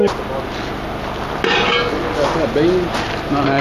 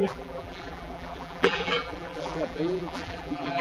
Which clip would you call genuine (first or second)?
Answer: first